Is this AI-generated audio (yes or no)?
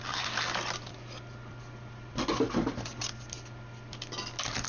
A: no